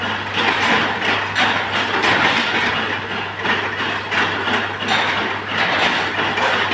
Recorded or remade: recorded